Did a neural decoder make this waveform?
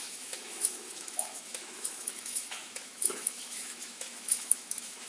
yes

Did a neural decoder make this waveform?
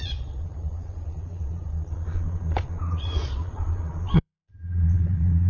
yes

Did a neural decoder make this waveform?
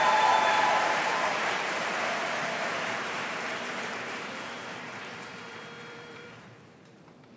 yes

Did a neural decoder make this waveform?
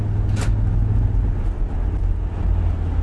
no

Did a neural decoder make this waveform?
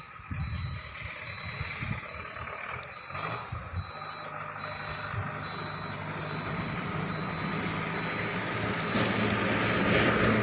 no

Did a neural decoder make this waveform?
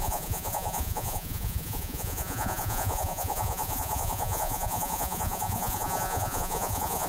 yes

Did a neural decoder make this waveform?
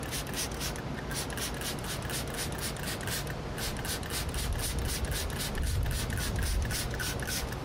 yes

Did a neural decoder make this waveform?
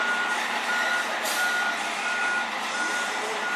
no